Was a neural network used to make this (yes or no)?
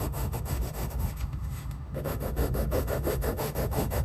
yes